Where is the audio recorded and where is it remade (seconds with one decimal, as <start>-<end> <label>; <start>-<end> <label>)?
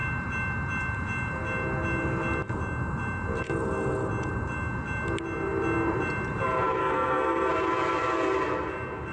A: 0.0-6.8 recorded; 6.8-7.5 remade; 7.5-9.1 recorded